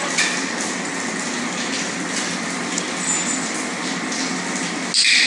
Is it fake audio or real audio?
real